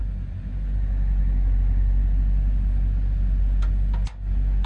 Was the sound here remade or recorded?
recorded